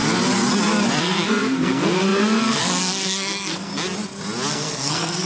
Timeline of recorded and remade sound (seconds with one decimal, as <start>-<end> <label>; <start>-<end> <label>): 0.0-1.0 recorded; 1.0-3.7 remade; 3.7-4.5 recorded; 4.5-5.2 remade